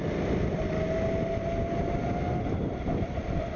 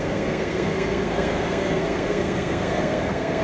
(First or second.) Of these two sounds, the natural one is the first